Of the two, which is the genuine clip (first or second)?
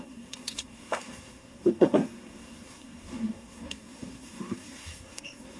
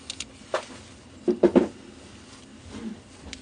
second